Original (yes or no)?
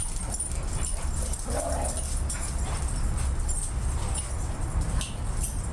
yes